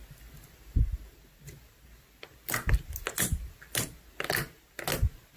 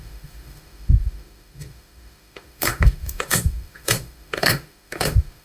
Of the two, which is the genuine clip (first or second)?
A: first